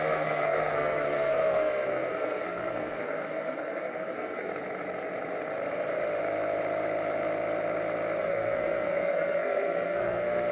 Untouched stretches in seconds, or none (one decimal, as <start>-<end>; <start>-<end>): 4.5-8.2